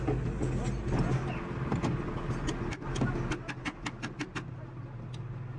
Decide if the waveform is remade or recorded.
recorded